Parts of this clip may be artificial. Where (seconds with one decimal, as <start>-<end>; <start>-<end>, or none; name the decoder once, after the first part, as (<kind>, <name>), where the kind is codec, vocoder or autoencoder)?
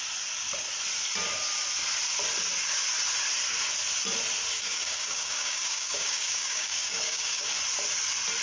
4.5-7.5 (codec, DAC)